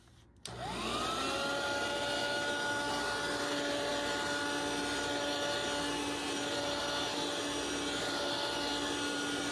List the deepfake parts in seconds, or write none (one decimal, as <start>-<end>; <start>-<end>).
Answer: 2.2-2.9